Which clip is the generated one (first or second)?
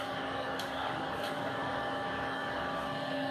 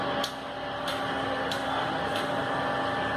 first